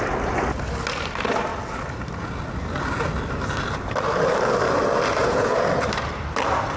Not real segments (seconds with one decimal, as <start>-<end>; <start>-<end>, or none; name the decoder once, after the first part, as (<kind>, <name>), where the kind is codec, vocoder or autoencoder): 5.2-5.7 (vocoder, Vocos)

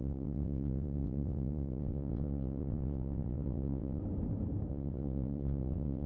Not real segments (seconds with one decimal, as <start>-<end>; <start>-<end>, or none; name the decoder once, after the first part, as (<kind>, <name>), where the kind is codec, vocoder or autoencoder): 0.0-4.0 (vocoder, WaveNeXt); 4.7-6.1

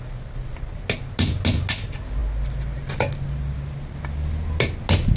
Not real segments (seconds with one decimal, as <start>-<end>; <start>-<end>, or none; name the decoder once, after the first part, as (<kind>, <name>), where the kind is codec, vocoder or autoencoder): none

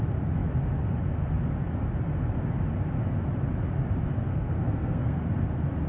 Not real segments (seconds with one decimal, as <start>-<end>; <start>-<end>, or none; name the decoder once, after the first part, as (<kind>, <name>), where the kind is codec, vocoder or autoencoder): 4.3-5.2 (codec, SNAC)

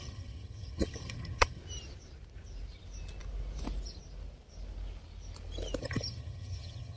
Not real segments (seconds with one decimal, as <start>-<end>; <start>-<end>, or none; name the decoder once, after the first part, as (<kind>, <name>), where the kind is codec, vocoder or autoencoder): 0.0-1.6 (vocoder, HiFi-GAN); 5.8-7.0

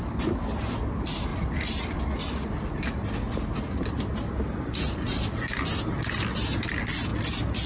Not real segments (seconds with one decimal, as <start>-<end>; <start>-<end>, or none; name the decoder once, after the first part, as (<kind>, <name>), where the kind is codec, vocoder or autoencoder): 1.3-2.2 (vocoder, BigVGAN v2)

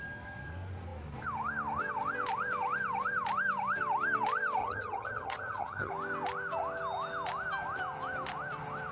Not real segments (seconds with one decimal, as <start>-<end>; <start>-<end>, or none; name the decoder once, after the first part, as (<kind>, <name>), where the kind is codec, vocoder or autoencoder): 4.6-5.9 (vocoder, HiFi-GAN)

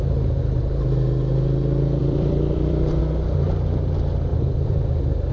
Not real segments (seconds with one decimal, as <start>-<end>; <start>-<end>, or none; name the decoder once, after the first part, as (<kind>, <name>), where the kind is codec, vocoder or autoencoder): 2.0-3.0 (vocoder, BigVGAN v2); 4.3-5.3